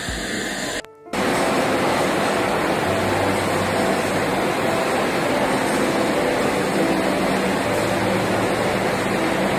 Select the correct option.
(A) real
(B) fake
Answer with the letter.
A